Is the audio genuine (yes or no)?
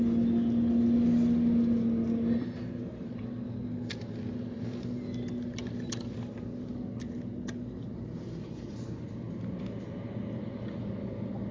yes